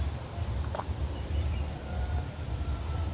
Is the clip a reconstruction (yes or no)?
no